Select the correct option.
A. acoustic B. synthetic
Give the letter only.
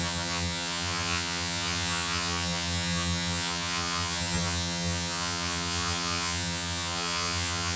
B